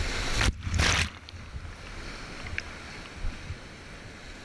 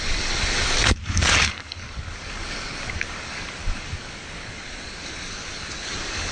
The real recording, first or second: first